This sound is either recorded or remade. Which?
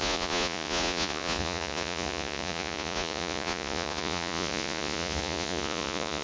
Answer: remade